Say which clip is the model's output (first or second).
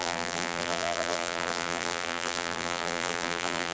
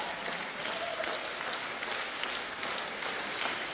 first